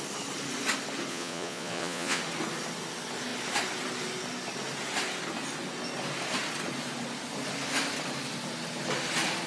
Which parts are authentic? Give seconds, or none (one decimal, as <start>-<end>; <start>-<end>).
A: 0.0-1.1; 2.2-9.5

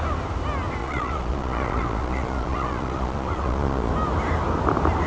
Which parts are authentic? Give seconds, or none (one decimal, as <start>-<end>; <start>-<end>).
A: 0.0-0.8; 3.9-5.1

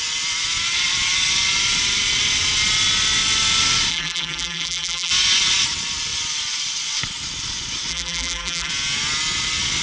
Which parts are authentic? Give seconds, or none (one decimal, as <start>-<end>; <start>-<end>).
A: 0.0-3.9; 5.1-7.9; 8.7-9.8

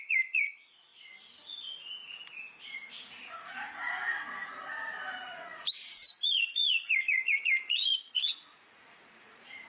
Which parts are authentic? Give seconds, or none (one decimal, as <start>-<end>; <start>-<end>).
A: 0.9-2.9

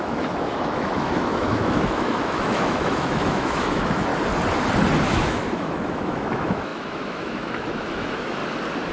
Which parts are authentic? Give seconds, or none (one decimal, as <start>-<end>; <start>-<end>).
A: 4.1-5.0; 8.4-8.9

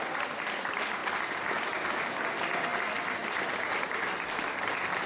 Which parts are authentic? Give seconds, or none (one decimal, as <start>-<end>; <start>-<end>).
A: 0.0-5.1